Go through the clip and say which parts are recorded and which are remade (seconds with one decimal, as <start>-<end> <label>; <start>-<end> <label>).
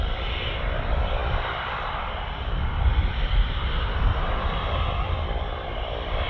0.0-6.3 recorded